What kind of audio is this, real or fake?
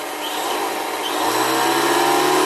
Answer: real